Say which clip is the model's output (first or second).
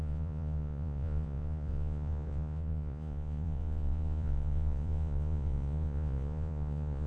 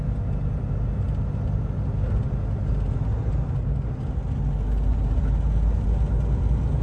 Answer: first